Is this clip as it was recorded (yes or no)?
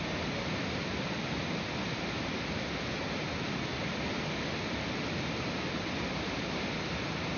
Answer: yes